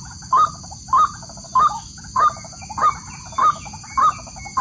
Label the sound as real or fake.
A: real